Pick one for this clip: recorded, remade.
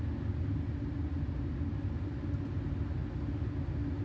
recorded